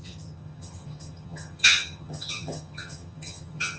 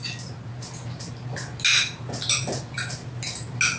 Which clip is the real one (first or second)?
second